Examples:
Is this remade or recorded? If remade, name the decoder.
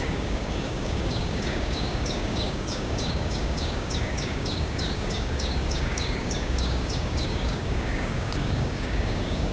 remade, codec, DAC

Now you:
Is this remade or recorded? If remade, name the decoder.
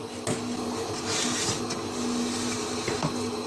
recorded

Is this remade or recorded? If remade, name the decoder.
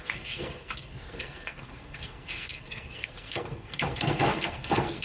remade, codec, SNAC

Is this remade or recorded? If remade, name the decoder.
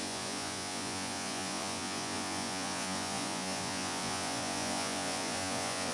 remade, vocoder, Vocos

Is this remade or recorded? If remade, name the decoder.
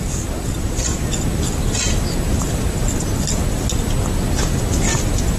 recorded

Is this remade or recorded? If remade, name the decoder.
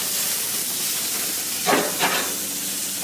recorded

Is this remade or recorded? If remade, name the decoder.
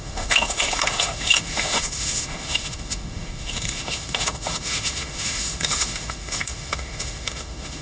remade, autoencoder, DAC-VAE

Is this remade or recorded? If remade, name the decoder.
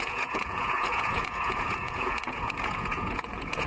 remade, vocoder, Vocos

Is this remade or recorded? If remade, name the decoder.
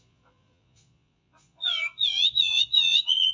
remade, vocoder, Vocos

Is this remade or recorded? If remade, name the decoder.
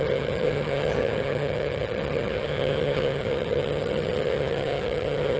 remade, vocoder, HiFi-GAN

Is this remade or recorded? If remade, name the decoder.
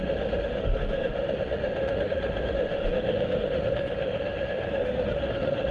remade, autoencoder, DAC-VAE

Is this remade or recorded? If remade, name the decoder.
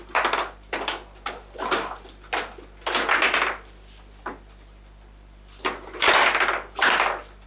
recorded